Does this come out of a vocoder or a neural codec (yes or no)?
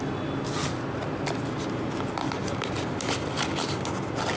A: no